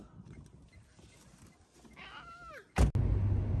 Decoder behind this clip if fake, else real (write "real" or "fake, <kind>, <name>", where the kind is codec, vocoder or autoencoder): real